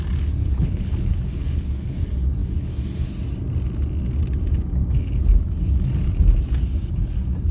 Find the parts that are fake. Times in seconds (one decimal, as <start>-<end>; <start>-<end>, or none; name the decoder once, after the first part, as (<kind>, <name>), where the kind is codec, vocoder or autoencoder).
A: 0.4-2.0 (codec, HILCodec)